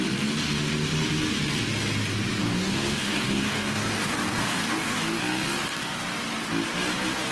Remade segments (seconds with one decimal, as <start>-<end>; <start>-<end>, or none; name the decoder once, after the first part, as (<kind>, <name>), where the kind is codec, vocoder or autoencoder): 2.4-5.2 (codec, DAC)